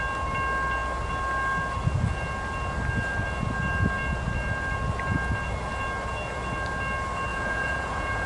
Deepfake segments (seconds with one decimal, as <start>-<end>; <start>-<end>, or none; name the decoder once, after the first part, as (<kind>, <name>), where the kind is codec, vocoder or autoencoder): 7.3-8.3 (vocoder, Vocos)